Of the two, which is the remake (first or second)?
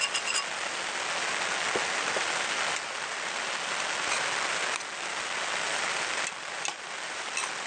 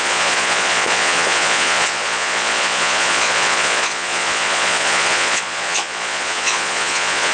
second